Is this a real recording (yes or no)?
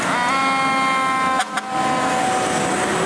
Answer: yes